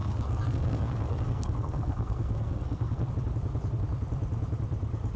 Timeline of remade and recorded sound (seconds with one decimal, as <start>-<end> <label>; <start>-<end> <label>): 0.0-3.1 remade; 3.1-5.2 recorded